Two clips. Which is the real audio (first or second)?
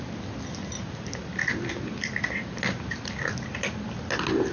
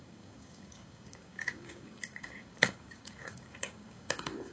first